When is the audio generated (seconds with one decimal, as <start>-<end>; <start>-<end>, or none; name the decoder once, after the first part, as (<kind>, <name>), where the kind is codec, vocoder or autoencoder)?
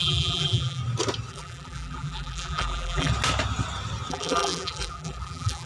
0.0-0.8 (vocoder, BigVGAN v2); 1.3-3.1; 4.1-5.7